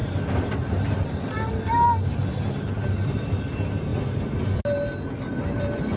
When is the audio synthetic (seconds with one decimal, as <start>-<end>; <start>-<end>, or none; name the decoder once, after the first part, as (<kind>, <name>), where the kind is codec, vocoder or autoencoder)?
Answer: 0.0-1.5 (vocoder, BigVGAN v2)

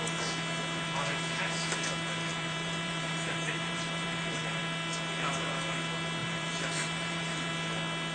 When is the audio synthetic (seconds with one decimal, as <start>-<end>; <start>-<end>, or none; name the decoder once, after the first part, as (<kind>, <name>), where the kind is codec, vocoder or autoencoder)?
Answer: 2.3-4.6 (vocoder, BigVGAN v2); 6.2-7.5

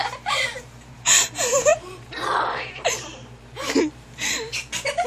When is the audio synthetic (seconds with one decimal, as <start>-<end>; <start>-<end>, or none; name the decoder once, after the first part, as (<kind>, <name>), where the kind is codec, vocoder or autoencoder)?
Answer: 0.0-5.1 (vocoder, BigVGAN v2)